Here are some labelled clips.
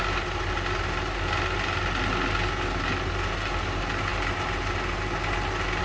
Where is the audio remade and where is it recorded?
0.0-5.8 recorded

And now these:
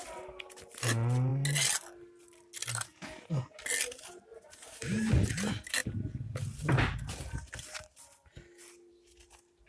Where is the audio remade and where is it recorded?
0.0-4.3 recorded; 4.3-5.1 remade; 5.1-9.7 recorded

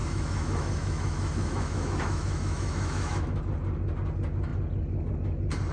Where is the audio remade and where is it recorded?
0.0-3.4 remade; 3.4-5.7 recorded

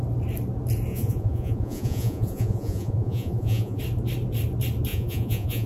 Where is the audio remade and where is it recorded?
0.0-0.9 recorded; 0.9-3.8 remade; 3.8-4.9 recorded; 4.9-5.7 remade

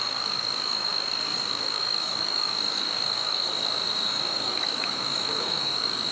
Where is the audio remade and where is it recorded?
0.0-6.1 remade

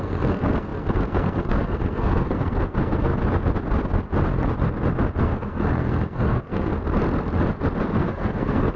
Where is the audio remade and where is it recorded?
0.0-3.1 remade; 3.1-5.2 recorded; 5.2-6.7 remade; 6.7-7.8 recorded; 7.8-8.8 remade